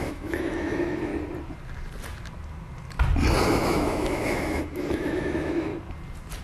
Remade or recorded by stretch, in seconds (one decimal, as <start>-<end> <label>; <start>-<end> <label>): 0.0-1.1 remade; 1.1-3.5 recorded; 3.5-5.7 remade; 5.7-6.4 recorded